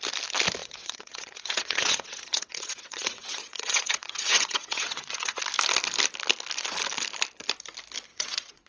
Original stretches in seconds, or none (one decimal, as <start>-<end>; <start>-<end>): 0.0-0.6; 5.4-8.1